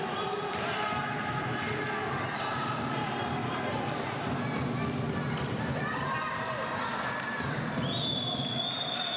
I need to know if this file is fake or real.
real